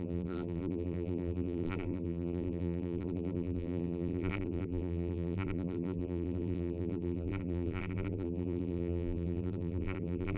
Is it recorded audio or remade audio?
remade